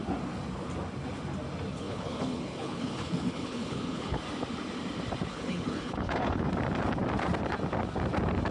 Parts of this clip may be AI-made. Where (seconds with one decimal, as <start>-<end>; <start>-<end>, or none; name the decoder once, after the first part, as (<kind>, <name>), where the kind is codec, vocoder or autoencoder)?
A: 1.7-4.2 (codec, HILCodec); 5.3-6.5

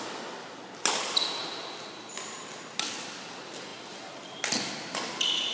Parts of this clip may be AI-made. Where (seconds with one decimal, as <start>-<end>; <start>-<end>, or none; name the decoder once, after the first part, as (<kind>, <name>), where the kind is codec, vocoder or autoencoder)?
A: none